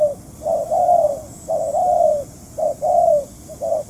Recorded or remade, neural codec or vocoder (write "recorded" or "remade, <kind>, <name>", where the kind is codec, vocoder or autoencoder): recorded